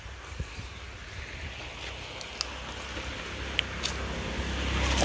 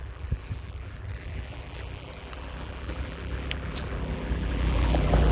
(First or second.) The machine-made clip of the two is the second